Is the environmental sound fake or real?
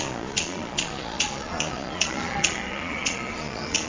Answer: fake